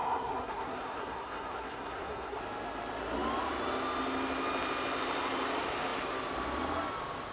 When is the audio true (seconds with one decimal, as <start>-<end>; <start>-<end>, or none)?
2.4-7.3